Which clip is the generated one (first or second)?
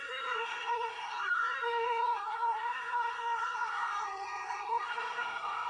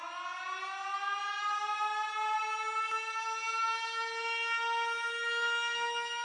first